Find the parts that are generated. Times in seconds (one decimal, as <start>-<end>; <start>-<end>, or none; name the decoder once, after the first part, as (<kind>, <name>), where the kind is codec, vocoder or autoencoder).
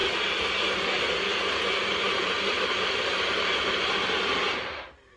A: 1.9-2.6 (vocoder, BigVGAN v2)